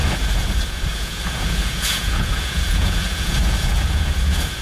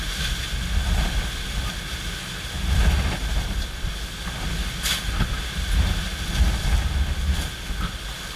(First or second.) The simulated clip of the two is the first